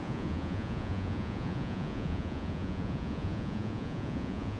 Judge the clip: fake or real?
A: fake